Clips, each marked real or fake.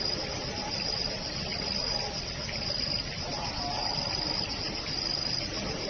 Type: real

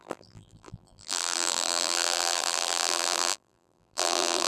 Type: fake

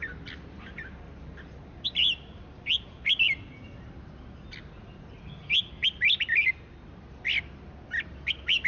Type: real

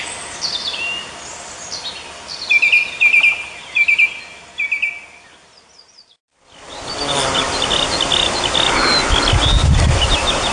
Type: real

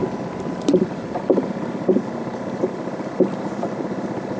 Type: real